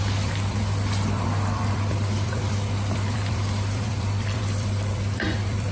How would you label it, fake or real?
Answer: fake